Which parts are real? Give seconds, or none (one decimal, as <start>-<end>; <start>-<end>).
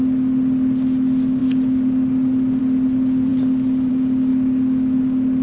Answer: 0.0-5.4